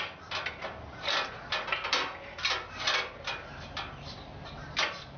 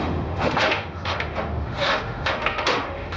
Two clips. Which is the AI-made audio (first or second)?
second